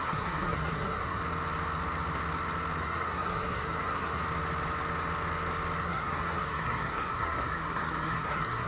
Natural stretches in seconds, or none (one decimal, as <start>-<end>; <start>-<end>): 1.2-2.8; 4.2-5.8